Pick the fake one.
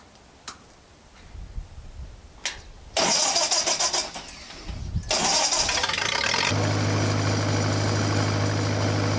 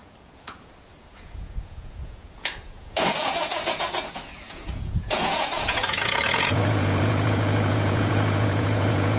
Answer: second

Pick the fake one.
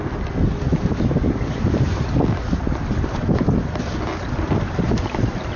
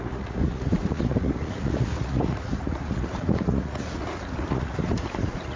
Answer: second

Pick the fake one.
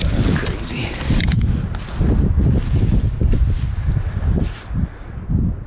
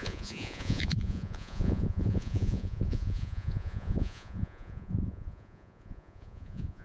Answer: second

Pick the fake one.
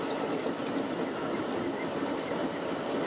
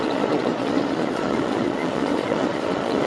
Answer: second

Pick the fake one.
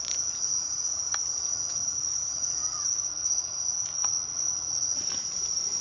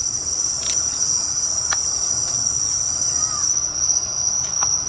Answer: first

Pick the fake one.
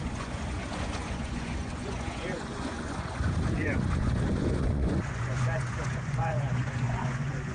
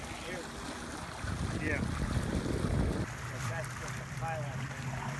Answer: first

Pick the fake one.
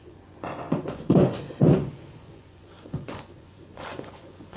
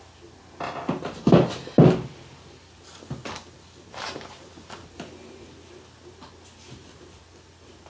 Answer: first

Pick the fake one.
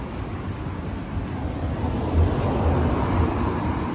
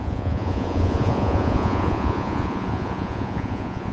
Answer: second